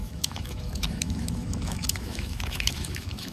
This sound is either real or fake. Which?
fake